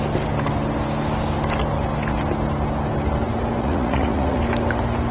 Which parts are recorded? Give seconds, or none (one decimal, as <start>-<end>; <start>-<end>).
0.0-3.6; 4.4-5.1